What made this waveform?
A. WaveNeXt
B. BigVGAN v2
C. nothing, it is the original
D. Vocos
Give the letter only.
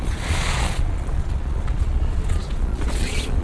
D